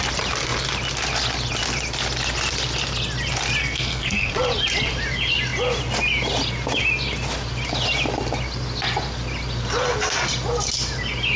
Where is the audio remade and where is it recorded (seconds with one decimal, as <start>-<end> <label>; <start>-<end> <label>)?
0.0-3.6 recorded; 3.6-4.3 remade; 4.3-11.4 recorded